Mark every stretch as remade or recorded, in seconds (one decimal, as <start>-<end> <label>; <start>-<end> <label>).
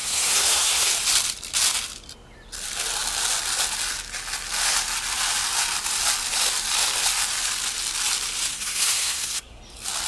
0.0-0.9 remade; 0.9-8.5 recorded; 8.5-9.6 remade; 9.6-10.1 recorded